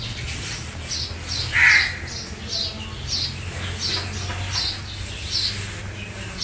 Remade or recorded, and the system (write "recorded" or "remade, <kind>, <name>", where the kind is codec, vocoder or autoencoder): recorded